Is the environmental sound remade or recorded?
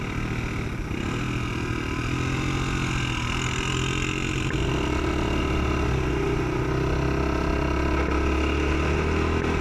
recorded